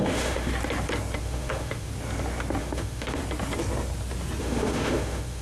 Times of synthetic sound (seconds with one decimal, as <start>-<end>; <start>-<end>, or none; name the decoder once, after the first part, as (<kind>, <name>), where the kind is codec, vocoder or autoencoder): 0.0-0.5 (autoencoder, DAC-VAE); 1.2-1.9; 2.6-3.2; 4.4-5.4